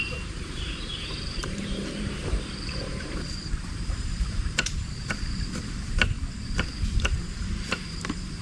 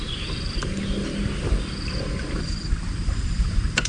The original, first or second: second